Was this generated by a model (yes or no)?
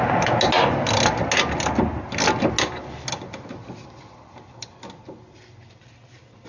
no